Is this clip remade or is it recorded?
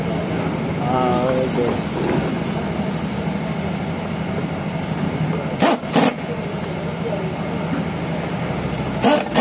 recorded